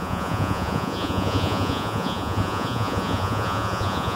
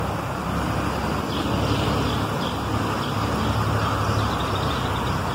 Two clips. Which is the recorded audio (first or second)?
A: second